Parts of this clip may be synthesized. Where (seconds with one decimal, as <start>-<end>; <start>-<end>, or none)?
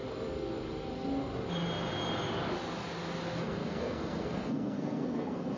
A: 3.4-5.6